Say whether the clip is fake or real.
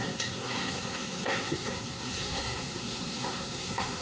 fake